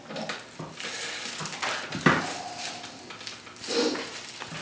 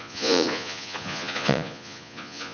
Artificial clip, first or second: second